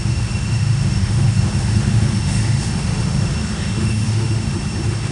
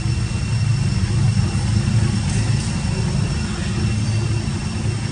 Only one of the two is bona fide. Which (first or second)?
second